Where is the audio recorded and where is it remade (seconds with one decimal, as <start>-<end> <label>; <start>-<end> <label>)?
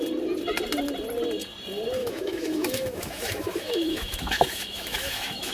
0.0-2.0 recorded; 2.0-5.5 remade